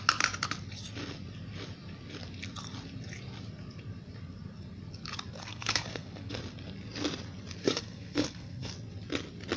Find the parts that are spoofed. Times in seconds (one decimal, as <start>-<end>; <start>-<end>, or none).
5.4-6.4; 7.6-8.7